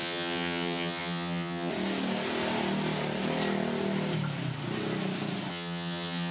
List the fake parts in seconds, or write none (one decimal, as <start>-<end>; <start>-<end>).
0.0-1.7; 5.5-6.3